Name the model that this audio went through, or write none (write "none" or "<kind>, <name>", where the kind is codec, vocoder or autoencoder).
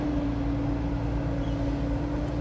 none